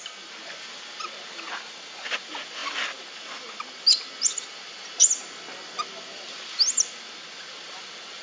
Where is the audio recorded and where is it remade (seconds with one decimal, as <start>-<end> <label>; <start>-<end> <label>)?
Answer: 0.0-8.2 recorded